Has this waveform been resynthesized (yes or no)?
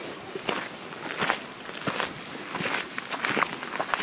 no